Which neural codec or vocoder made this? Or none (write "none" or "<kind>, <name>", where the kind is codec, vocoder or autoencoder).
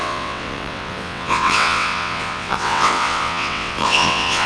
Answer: vocoder, WaveNeXt